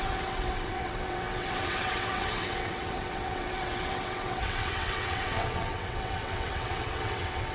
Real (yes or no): no